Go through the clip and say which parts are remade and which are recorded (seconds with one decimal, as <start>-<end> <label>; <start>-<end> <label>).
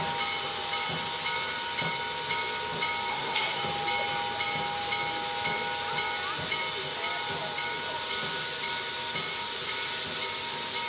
0.0-3.1 recorded; 3.1-3.6 remade; 3.6-10.9 recorded